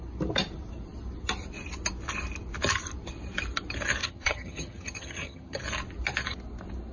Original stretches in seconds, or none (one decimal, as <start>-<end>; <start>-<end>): 0.0-4.0; 5.6-6.9